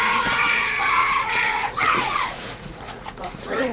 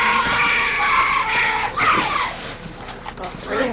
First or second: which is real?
second